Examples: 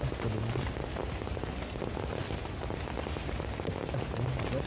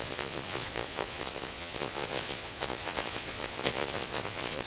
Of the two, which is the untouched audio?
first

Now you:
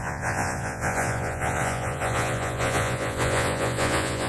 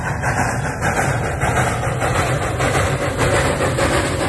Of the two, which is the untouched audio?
second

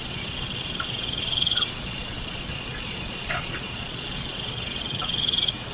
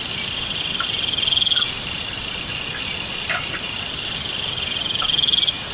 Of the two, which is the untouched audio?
second